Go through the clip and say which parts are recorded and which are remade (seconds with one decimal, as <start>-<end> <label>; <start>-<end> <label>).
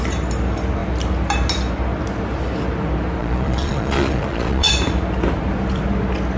0.0-3.2 recorded; 3.2-4.7 remade; 4.7-6.4 recorded